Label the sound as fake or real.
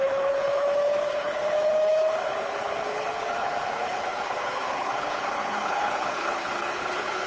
fake